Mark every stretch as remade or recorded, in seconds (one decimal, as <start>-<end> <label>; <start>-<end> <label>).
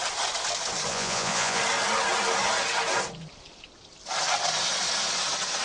0.0-0.9 recorded; 0.9-1.6 remade; 1.6-5.6 recorded